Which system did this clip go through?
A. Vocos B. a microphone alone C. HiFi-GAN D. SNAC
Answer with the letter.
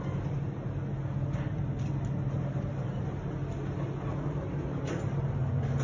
B